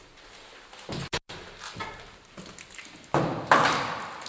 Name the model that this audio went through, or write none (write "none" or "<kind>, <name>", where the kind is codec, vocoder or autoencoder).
none